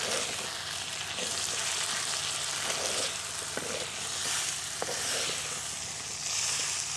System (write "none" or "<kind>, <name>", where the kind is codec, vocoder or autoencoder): none